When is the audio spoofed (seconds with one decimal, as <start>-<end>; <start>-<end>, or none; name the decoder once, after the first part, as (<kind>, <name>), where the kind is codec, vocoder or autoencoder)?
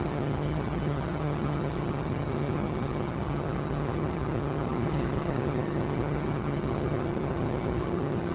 0.0-8.3 (vocoder, HiFi-GAN)